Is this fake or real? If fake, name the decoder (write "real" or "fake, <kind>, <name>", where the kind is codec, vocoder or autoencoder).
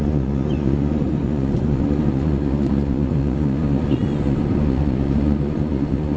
fake, vocoder, Vocos